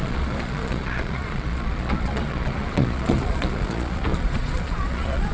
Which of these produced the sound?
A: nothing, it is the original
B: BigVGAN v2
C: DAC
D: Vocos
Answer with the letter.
D